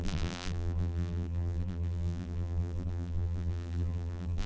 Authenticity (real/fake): fake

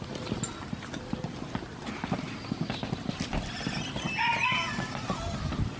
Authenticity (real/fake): real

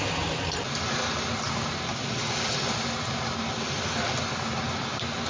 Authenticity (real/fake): real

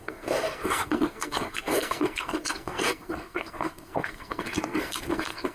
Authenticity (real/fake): fake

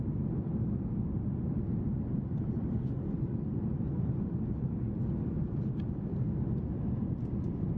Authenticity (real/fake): real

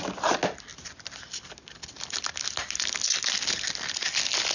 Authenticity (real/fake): real